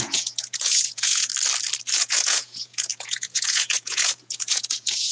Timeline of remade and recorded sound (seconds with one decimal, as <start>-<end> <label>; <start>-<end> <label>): 0.0-1.3 remade; 1.3-1.9 recorded; 1.9-5.1 remade